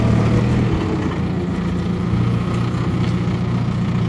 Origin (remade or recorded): recorded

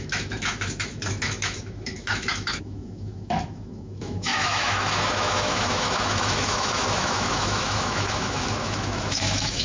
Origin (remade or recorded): remade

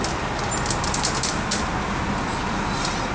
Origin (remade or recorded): remade